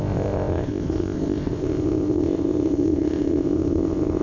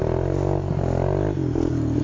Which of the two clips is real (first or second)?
second